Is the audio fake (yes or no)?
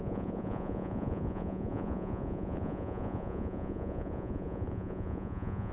yes